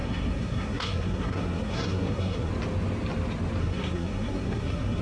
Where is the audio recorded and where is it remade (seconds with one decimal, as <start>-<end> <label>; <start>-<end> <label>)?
0.0-2.5 remade; 2.5-3.6 recorded; 3.6-5.0 remade